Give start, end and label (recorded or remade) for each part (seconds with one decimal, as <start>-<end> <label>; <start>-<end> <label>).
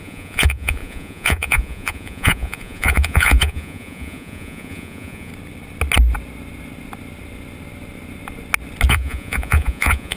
0.0-5.3 remade; 5.3-8.9 recorded; 8.9-10.2 remade